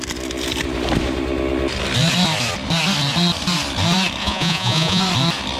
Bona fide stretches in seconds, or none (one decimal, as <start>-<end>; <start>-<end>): 0.0-4.2; 5.0-5.6